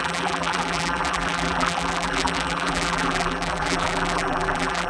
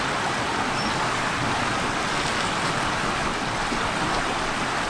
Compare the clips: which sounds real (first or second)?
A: second